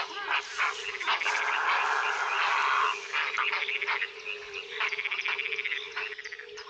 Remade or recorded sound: recorded